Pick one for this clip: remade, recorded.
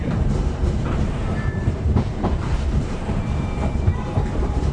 remade